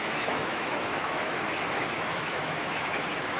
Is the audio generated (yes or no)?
yes